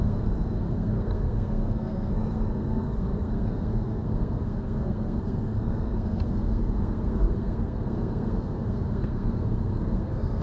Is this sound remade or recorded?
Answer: remade